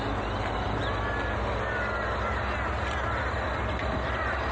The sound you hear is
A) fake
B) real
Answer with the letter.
B